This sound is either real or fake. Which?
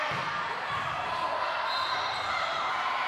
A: real